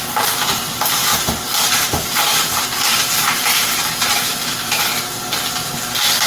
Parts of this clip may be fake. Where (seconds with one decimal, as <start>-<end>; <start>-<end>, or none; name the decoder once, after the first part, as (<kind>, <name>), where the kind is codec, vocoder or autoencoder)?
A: 1.0-4.8 (vocoder, BigVGAN v2)